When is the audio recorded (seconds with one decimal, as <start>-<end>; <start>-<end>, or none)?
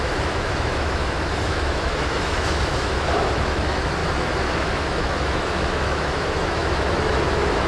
none